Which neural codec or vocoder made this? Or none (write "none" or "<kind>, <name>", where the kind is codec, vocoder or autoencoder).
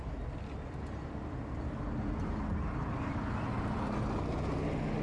none